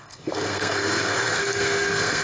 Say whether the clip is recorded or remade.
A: remade